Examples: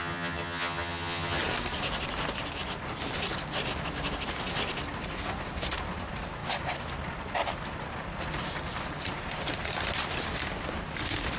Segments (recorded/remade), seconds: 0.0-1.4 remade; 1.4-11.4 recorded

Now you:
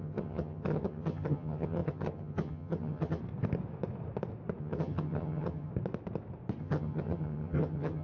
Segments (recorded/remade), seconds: 0.0-3.2 remade; 3.2-4.6 recorded; 4.6-5.7 remade; 5.7-6.6 recorded; 6.6-8.0 remade

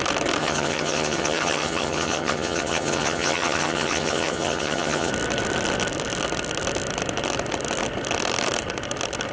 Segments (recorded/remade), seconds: 0.0-0.4 recorded; 0.4-5.1 remade; 5.1-9.3 recorded

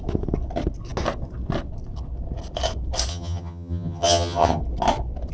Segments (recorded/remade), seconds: 0.0-3.1 recorded; 3.1-4.6 remade; 4.6-5.3 recorded